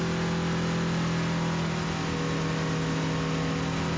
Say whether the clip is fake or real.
real